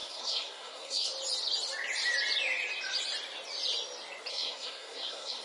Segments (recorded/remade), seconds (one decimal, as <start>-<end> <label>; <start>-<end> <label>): 0.0-1.1 remade; 1.1-4.3 recorded; 4.3-5.4 remade